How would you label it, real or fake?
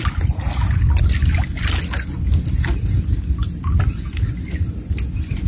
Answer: real